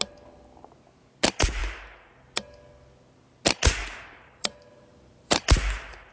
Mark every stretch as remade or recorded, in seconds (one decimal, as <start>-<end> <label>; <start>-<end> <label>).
0.0-1.6 recorded; 1.6-2.1 remade; 2.1-3.8 recorded; 3.8-6.1 remade